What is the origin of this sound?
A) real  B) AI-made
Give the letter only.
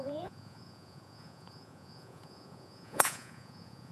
B